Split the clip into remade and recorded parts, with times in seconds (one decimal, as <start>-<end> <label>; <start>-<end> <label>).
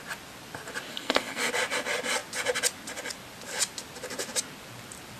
0.0-0.9 recorded; 0.9-1.5 remade; 1.5-5.2 recorded